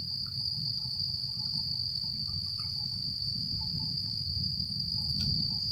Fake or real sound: fake